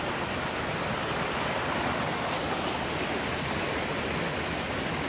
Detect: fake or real real